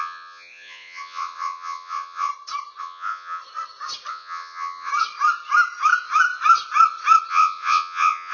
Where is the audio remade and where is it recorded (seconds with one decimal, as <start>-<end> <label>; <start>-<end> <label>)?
0.0-2.3 remade; 2.3-2.8 recorded; 2.8-3.4 remade; 3.4-4.1 recorded; 4.1-4.9 remade; 4.9-7.3 recorded; 7.3-8.3 remade